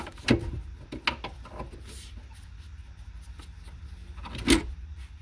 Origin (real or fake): real